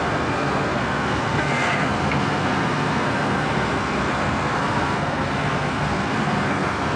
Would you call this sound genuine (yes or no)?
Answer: no